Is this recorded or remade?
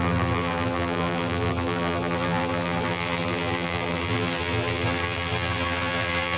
remade